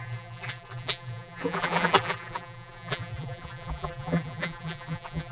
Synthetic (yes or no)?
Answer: yes